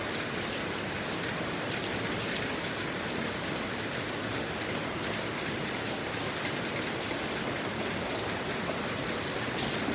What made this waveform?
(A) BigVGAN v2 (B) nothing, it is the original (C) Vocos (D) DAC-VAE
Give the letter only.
B